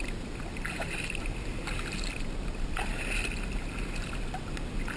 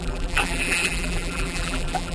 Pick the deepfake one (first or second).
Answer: second